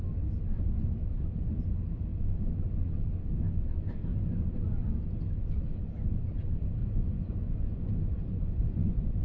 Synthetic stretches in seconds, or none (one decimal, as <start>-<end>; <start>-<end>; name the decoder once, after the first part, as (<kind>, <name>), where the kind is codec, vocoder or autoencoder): 4.1-4.9 (vocoder, Vocos); 6.8-9.2